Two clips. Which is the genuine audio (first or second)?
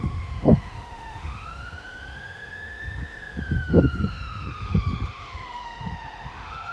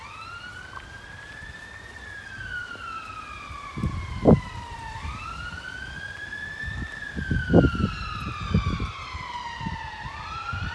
second